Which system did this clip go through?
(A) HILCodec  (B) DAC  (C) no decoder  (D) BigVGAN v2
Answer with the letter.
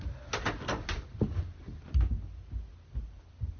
C